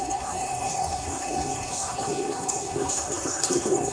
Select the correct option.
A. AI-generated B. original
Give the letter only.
A